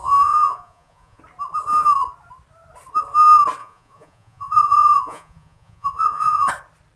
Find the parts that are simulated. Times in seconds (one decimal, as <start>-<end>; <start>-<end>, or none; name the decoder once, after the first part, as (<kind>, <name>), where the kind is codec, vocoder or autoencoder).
0.0-1.2 (vocoder, Vocos); 3.6-6.5